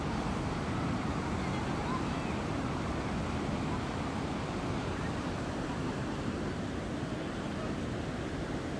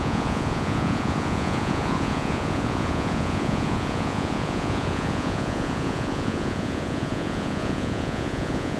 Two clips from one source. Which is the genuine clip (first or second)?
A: first